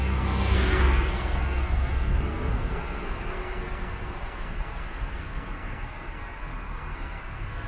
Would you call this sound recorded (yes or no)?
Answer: no